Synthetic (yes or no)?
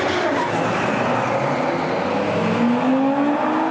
no